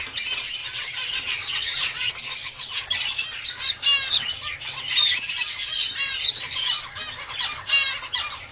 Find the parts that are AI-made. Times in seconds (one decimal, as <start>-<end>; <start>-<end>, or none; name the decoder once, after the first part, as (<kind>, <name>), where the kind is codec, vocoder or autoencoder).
0.6-2.1 (vocoder, WaveNeXt)